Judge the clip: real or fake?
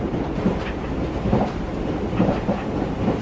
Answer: fake